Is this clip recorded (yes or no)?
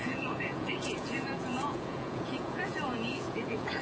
no